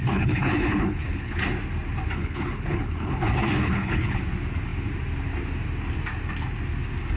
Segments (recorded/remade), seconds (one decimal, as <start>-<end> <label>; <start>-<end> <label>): 0.0-1.4 remade; 1.4-2.2 recorded; 2.2-4.2 remade; 4.2-7.2 recorded